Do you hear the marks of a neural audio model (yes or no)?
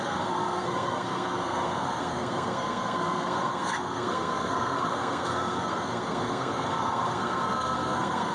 yes